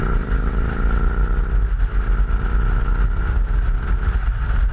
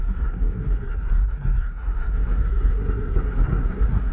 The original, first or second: first